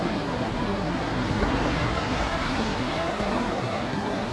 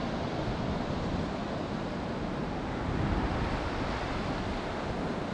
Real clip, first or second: second